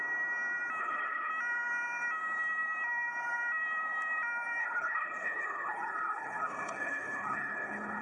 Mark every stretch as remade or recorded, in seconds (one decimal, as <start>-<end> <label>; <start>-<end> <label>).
0.0-0.8 recorded; 0.8-1.3 remade; 1.3-4.6 recorded; 4.6-8.0 remade